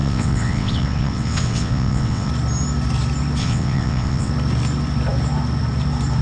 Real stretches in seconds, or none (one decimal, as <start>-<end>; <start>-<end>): 2.3-3.4; 4.3-6.2